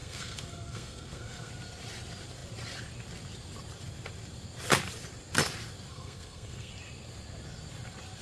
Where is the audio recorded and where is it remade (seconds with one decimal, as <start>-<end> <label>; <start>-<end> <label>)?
0.0-1.5 remade; 1.5-5.9 recorded; 5.9-6.7 remade; 6.7-8.2 recorded